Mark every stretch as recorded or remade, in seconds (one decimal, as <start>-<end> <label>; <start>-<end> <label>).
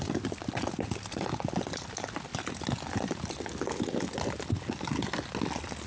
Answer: 0.0-5.9 recorded